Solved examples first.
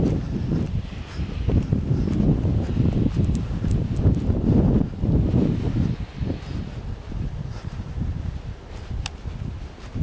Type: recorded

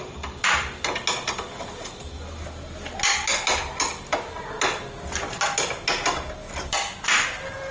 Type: recorded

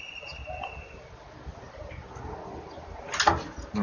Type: recorded